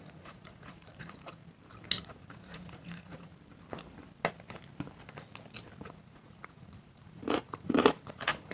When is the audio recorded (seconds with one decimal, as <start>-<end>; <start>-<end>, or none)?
1.4-2.0; 3.3-5.8